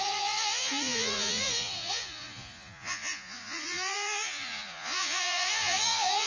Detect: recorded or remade remade